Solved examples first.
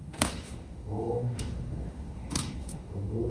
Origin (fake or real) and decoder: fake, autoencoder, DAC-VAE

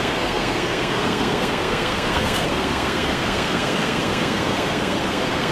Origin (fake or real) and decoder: fake, codec, SNAC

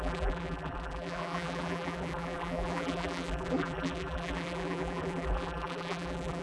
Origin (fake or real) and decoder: fake, vocoder, BigVGAN v2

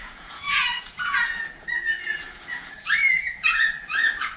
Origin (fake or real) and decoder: fake, vocoder, Vocos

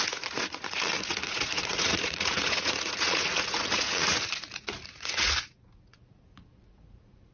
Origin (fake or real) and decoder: fake, vocoder, Vocos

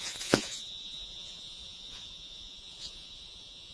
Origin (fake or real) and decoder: fake, vocoder, Vocos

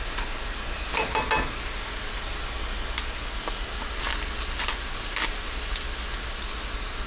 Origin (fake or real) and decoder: real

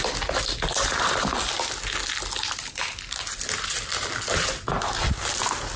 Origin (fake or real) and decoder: real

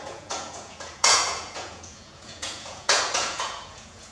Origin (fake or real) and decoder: fake, vocoder, Vocos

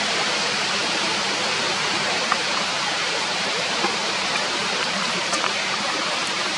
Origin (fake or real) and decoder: fake, vocoder, BigVGAN v2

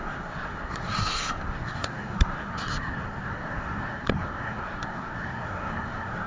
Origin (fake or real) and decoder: fake, codec, SNAC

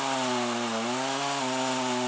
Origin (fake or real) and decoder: real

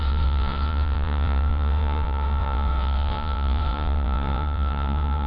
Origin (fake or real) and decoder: fake, vocoder, WaveNeXt